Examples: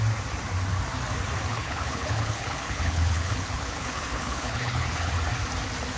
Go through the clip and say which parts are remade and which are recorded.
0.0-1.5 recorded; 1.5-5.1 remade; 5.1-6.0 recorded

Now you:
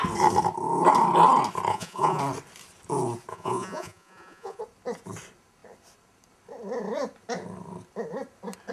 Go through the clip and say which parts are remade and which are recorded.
0.0-1.7 recorded; 1.7-2.2 remade; 2.2-3.3 recorded; 3.3-4.6 remade; 4.6-8.7 recorded

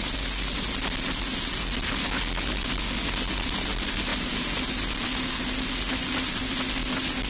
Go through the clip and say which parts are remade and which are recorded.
0.0-7.3 recorded

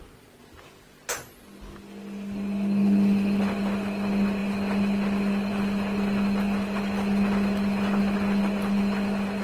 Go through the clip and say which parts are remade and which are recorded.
0.0-9.4 recorded

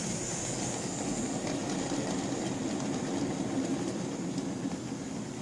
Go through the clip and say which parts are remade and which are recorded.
0.0-5.4 recorded